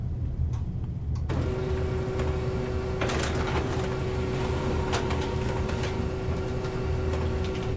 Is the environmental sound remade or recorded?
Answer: recorded